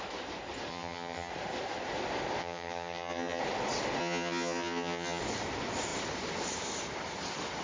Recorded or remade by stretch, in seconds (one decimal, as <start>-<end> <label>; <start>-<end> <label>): 0.0-0.7 recorded; 0.7-1.3 remade; 1.3-2.4 recorded; 2.4-3.4 remade; 3.4-4.0 recorded; 4.0-5.2 remade; 5.2-7.6 recorded